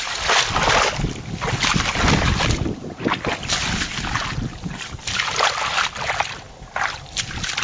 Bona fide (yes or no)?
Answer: yes